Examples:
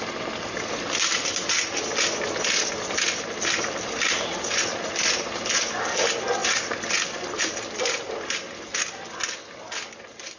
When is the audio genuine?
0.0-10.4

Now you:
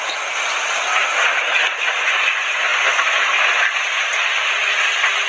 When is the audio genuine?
0.0-5.3

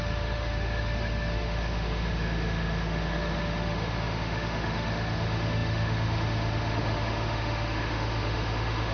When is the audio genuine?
none